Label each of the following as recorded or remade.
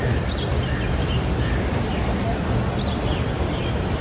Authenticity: recorded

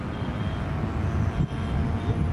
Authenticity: recorded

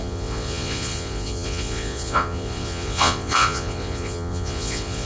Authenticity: remade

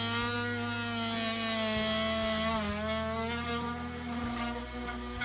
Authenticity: recorded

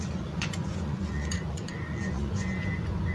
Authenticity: remade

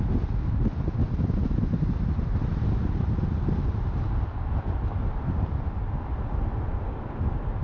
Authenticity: recorded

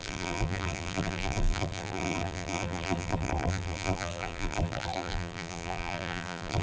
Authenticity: remade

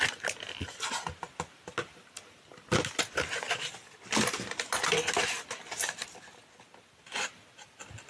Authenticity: recorded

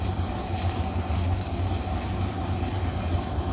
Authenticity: recorded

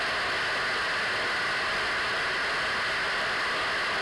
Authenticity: recorded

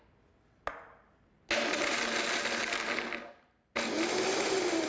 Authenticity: recorded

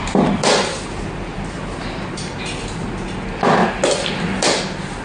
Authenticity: recorded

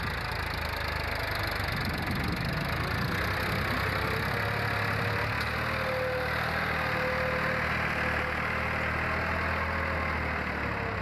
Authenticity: recorded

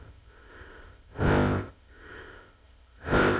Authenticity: remade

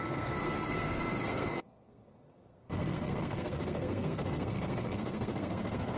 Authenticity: remade